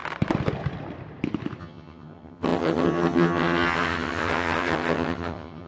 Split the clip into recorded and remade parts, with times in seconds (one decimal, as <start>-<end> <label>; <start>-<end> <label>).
0.0-1.6 recorded; 1.6-5.7 remade